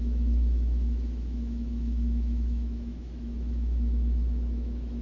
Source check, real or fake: fake